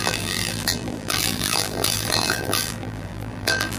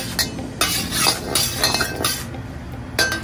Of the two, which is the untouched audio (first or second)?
second